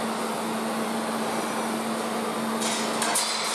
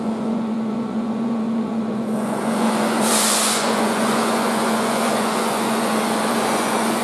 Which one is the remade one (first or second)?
second